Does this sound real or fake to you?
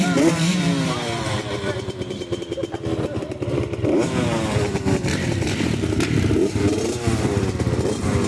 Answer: fake